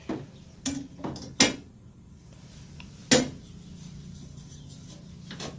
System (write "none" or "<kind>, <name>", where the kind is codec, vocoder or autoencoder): none